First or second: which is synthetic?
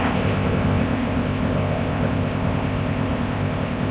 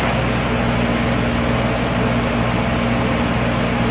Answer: first